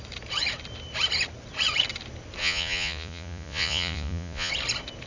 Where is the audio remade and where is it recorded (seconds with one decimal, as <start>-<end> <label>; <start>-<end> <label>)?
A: 0.0-2.4 recorded; 2.4-4.5 remade; 4.5-5.1 recorded